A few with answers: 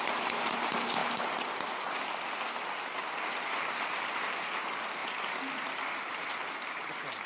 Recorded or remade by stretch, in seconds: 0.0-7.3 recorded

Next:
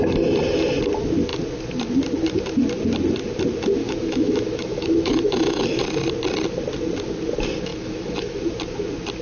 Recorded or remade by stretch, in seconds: 0.0-3.8 recorded; 3.8-5.8 remade; 5.8-7.7 recorded; 7.7-8.4 remade; 8.4-9.2 recorded

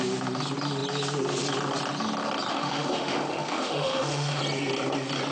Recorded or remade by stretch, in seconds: 0.0-2.5 recorded; 2.5-4.4 remade; 4.4-5.3 recorded

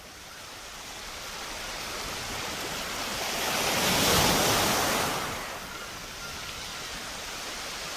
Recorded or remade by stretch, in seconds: 0.0-8.0 recorded